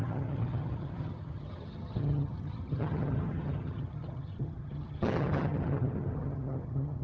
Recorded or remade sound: remade